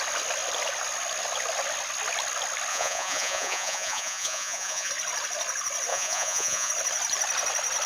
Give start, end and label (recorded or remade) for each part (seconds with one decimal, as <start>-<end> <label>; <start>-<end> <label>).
0.0-2.7 recorded; 2.7-4.9 remade; 4.9-5.9 recorded; 5.9-6.7 remade; 6.7-7.9 recorded